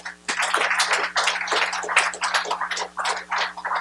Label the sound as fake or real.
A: real